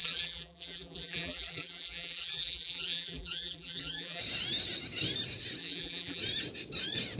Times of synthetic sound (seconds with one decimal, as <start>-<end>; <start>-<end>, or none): 0.0-4.2; 5.6-6.2

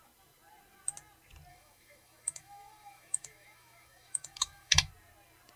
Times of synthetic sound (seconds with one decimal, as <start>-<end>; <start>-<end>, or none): 1.5-4.9

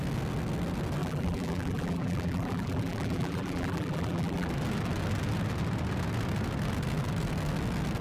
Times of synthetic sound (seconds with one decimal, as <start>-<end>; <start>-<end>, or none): 1.0-4.5

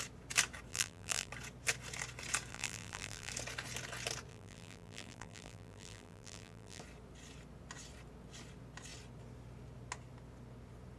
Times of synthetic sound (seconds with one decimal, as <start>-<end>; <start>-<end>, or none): 0.7-1.3; 2.5-3.3; 4.3-6.8

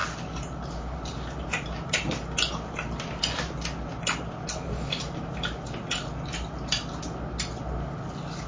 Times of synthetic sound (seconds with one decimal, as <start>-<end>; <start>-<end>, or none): none

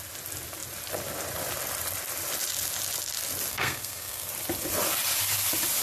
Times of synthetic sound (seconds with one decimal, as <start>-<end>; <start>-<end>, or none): 3.5-4.3

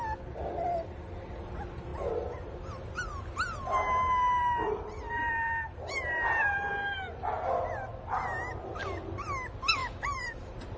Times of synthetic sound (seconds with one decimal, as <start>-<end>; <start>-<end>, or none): 9.8-10.8